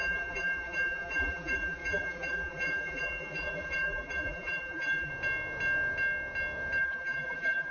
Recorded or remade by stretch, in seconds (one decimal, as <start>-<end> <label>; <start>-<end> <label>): 0.0-5.1 remade; 5.1-6.8 recorded; 6.8-7.7 remade